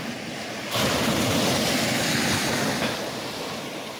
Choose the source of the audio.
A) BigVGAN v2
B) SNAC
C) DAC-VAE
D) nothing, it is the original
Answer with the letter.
D